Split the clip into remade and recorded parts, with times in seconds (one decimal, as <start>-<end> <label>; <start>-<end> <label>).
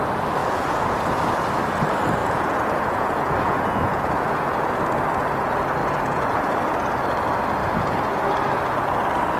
0.0-0.4 recorded; 0.4-1.0 remade; 1.0-2.2 recorded; 2.2-4.8 remade; 4.8-5.8 recorded; 5.8-6.5 remade; 6.5-7.6 recorded; 7.6-8.1 remade; 8.1-9.4 recorded